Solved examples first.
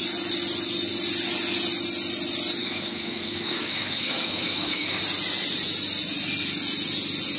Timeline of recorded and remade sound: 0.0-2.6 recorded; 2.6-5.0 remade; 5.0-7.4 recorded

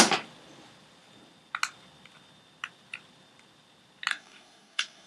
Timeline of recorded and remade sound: 0.0-4.1 recorded; 4.1-5.1 remade

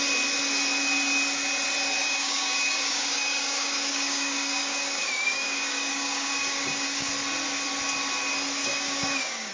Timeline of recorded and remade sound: 0.0-2.0 recorded; 2.0-7.1 remade; 7.1-8.6 recorded; 8.6-9.5 remade

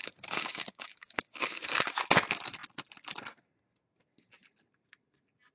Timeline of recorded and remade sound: 0.0-1.9 remade; 1.9-5.5 recorded